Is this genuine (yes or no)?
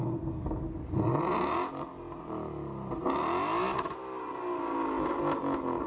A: yes